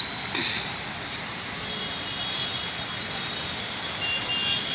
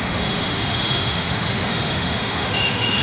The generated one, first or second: second